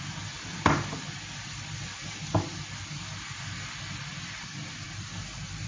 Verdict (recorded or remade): recorded